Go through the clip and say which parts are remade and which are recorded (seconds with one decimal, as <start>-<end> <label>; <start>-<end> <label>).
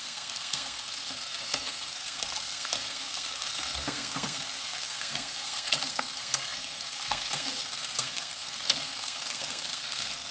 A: 0.0-10.3 remade